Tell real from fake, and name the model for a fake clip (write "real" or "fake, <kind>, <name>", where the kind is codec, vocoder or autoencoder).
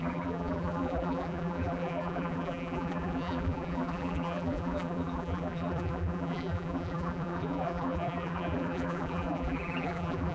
fake, vocoder, BigVGAN v2